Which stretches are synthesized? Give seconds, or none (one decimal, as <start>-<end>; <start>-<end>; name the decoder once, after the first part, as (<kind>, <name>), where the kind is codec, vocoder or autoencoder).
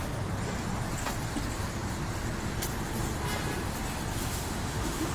4.2-5.1 (autoencoder, DAC-VAE)